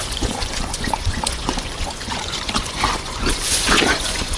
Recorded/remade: remade